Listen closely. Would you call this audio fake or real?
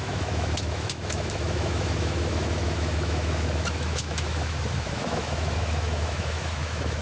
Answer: fake